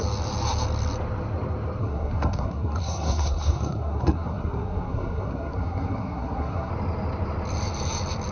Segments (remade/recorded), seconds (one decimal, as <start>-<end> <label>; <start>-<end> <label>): 0.0-1.8 recorded; 1.8-6.7 remade; 6.7-8.3 recorded